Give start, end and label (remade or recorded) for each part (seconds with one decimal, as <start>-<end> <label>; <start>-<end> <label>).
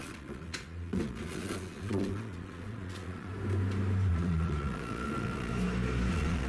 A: 0.0-3.3 remade; 3.3-4.1 recorded; 4.1-5.5 remade; 5.5-6.1 recorded; 6.1-6.5 remade